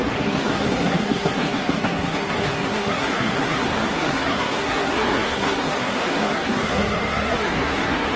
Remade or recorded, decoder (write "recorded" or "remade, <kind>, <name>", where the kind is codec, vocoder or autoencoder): remade, codec, SNAC